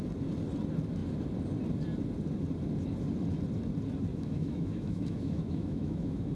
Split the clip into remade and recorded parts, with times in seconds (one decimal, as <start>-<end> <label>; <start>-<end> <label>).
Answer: 0.0-4.1 recorded; 4.1-6.3 remade